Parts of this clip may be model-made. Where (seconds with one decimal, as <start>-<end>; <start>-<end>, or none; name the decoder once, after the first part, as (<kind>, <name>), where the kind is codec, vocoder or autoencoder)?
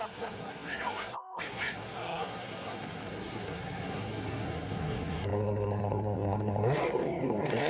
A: 0.0-7.7 (codec, SNAC)